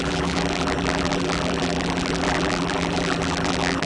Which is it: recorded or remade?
remade